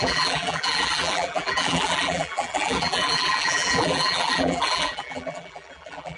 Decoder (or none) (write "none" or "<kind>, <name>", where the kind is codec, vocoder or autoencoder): vocoder, BigVGAN v2